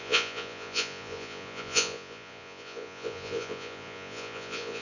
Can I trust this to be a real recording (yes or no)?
no